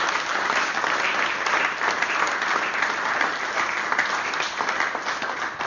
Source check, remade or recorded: recorded